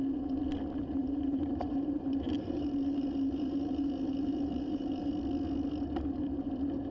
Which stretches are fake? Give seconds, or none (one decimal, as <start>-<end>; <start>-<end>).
1.0-5.1